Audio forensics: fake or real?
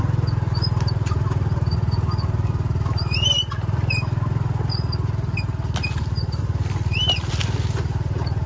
real